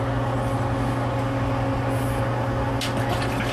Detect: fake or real real